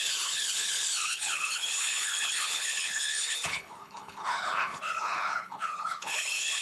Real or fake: fake